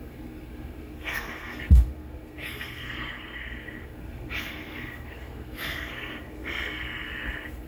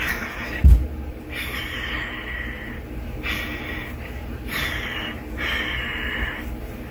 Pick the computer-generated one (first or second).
first